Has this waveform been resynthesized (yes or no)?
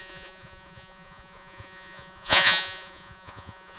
yes